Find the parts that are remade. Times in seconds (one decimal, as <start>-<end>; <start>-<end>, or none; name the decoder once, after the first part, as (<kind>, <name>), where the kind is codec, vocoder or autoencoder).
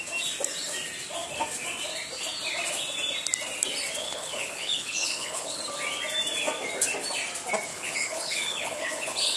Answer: 4.0-5.6 (codec, HILCodec); 7.7-9.4